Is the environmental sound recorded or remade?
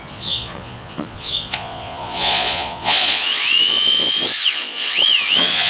remade